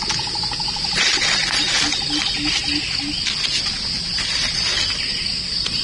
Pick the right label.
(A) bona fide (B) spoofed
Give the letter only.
A